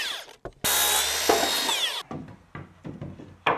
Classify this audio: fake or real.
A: real